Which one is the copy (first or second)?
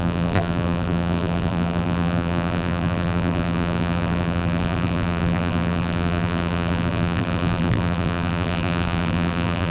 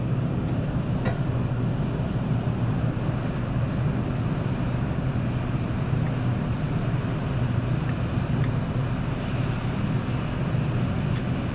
first